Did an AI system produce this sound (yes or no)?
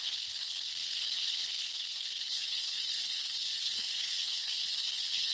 yes